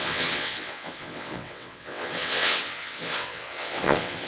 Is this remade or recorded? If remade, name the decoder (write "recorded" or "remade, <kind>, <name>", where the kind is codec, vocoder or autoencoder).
remade, vocoder, WaveNeXt